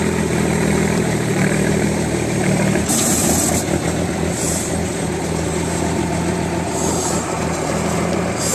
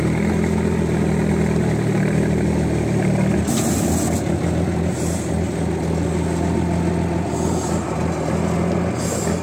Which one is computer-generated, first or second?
first